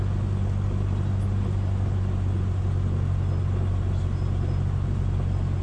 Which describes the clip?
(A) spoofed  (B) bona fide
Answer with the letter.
B